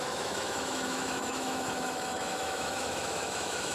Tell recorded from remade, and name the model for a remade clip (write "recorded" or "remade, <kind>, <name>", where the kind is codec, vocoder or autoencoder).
remade, autoencoder, DAC-VAE